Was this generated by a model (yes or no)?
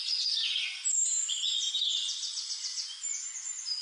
no